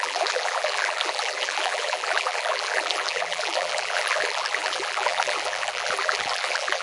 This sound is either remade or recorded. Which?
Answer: remade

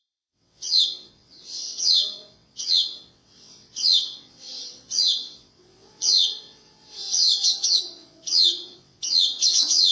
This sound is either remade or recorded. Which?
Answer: remade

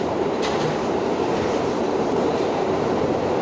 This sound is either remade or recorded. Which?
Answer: remade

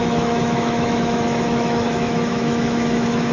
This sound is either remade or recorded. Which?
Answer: remade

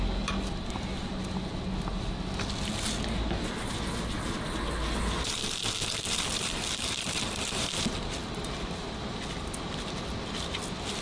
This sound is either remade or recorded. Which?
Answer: recorded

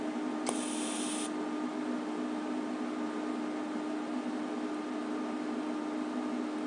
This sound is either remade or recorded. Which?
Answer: recorded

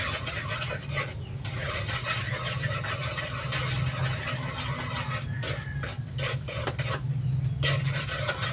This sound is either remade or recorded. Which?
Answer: recorded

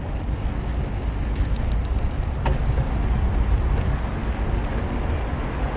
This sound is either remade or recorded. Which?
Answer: recorded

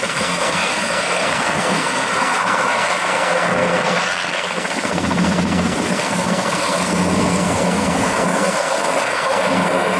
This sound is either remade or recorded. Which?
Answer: remade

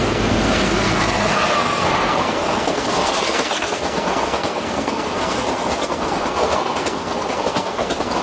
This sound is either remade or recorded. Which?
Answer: remade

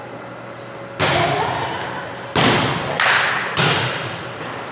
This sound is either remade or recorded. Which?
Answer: recorded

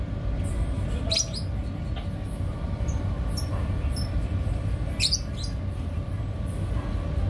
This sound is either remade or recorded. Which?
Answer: recorded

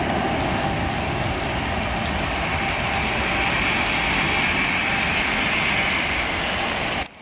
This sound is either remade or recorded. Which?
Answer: recorded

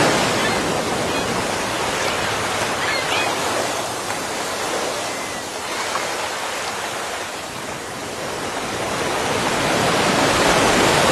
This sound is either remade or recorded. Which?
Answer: recorded